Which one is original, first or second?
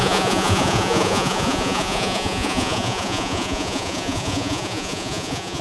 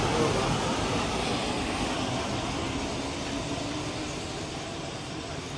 second